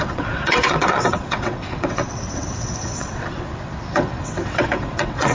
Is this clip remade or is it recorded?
remade